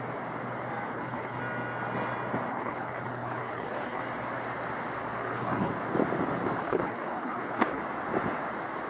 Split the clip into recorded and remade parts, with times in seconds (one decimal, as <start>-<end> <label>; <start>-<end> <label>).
0.0-0.9 recorded; 0.9-1.4 remade; 1.4-2.5 recorded; 2.5-4.0 remade; 4.0-5.2 recorded; 5.2-5.7 remade; 5.7-6.6 recorded; 6.6-7.8 remade; 7.8-8.9 recorded